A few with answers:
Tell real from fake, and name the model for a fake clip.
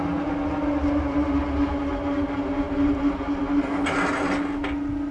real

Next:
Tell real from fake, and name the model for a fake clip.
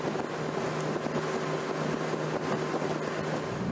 real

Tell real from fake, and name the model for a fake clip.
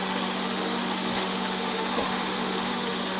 fake, autoencoder, DAC-VAE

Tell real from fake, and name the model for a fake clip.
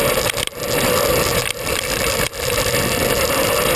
real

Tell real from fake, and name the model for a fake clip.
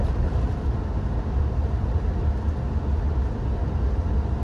real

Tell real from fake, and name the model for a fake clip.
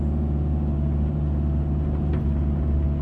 real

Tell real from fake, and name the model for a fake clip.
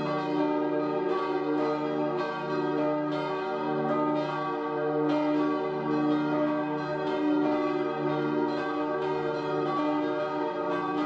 real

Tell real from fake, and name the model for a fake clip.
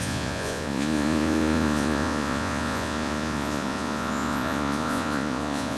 fake, vocoder, Vocos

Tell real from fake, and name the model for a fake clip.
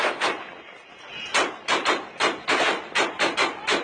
real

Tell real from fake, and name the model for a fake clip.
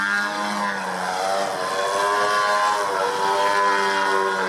real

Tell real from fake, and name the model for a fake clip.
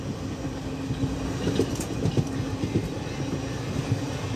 real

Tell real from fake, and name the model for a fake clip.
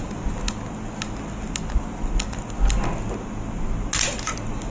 real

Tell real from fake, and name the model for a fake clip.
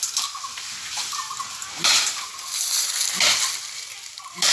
real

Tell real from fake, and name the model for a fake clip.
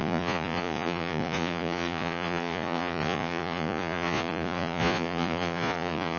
fake, vocoder, Vocos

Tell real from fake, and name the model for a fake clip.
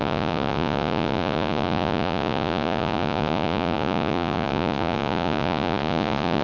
fake, vocoder, Vocos